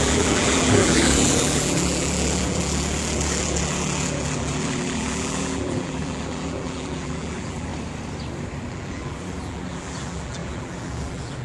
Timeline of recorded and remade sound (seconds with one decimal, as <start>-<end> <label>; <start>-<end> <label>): 0.0-7.7 remade; 7.7-8.7 recorded; 8.7-11.4 remade